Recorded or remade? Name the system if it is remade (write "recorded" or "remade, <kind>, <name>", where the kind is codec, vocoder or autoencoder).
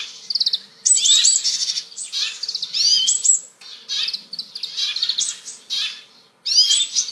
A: recorded